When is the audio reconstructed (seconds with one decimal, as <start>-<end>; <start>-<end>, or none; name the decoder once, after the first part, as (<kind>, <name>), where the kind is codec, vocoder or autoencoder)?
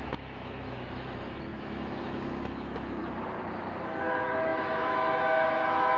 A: 0.0-3.0 (autoencoder, DAC-VAE); 3.8-6.0